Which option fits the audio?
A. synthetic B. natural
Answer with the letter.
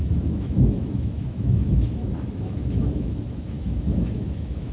A